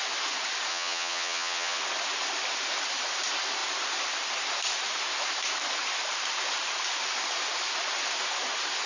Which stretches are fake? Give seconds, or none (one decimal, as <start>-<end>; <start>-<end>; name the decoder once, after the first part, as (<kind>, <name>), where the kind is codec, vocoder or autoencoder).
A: 0.7-1.8 (vocoder, HiFi-GAN)